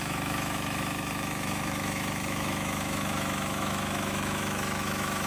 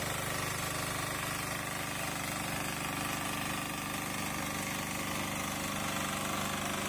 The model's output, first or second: first